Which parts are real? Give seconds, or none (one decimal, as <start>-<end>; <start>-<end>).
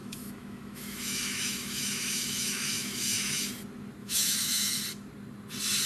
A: 3.5-4.0; 4.8-5.9